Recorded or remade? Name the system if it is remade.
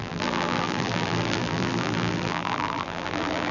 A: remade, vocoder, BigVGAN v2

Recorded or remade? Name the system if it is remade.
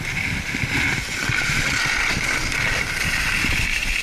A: recorded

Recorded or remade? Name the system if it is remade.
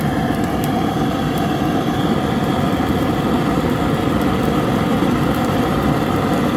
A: remade, vocoder, BigVGAN v2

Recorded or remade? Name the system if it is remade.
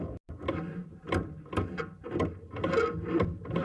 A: remade, vocoder, BigVGAN v2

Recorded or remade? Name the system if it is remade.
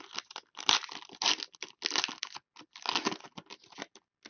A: recorded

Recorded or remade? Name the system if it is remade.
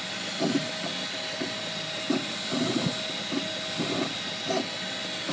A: recorded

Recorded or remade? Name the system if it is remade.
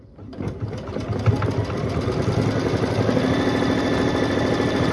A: recorded